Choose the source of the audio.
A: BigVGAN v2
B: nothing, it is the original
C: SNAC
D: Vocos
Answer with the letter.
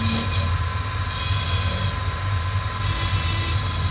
B